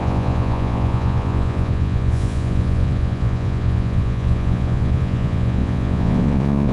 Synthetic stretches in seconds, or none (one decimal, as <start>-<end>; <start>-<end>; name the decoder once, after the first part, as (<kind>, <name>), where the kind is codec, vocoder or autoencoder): 0.0-6.7 (vocoder, Vocos)